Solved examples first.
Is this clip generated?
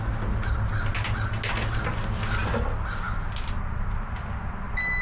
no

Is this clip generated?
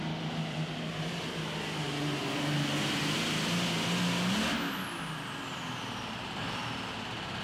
no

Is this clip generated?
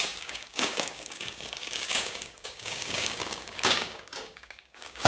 yes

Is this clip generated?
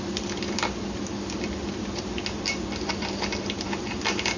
no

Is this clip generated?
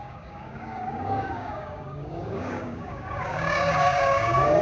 yes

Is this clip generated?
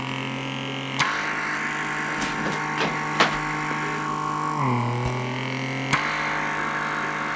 no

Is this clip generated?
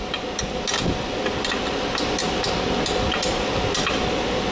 no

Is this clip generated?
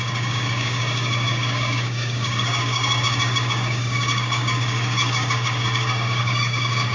yes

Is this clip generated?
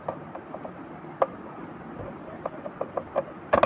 no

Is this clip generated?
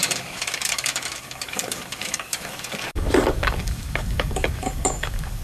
yes